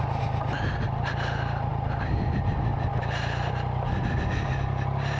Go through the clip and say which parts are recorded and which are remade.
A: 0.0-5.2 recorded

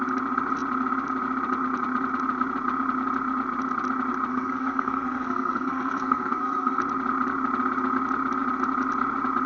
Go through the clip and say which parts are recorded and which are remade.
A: 0.0-4.3 recorded; 4.3-6.8 remade; 6.8-9.5 recorded

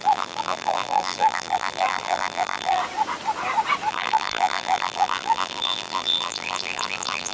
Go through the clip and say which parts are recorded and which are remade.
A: 0.0-2.8 remade; 2.8-3.9 recorded; 3.9-7.3 remade

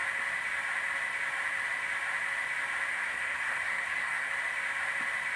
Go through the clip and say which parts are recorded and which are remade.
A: 0.0-2.9 recorded; 2.9-4.3 remade; 4.3-5.4 recorded

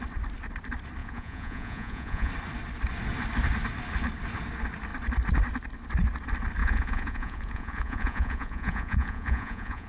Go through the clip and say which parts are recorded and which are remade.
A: 0.0-1.0 recorded; 1.0-2.3 remade; 2.3-6.6 recorded; 6.6-9.9 remade

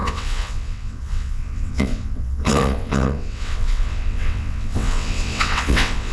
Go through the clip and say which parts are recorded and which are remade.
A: 0.0-6.1 remade